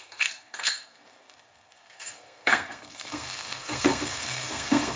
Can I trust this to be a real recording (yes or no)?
no